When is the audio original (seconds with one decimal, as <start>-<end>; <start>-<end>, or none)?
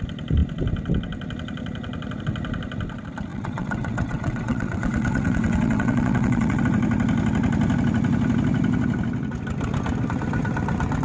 0.0-3.3; 6.6-11.0